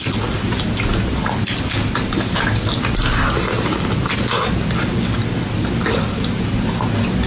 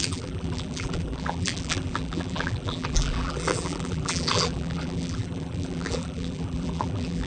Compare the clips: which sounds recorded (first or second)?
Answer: first